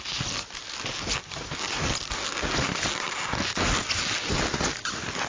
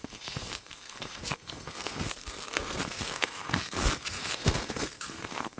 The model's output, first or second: second